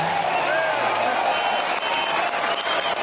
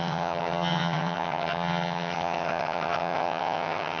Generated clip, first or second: second